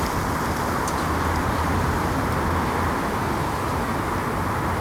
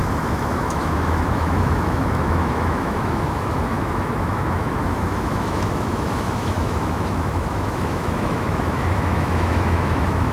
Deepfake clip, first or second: second